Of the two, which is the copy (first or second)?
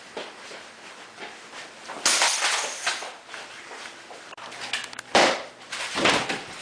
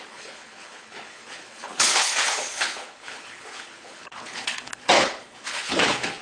second